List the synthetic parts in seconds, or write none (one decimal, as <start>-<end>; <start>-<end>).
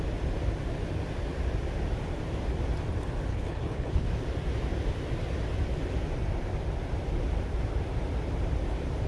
3.3-4.1